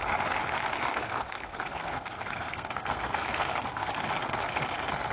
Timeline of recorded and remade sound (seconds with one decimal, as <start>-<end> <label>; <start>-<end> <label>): 0.0-0.9 recorded; 0.9-4.0 remade; 4.0-5.1 recorded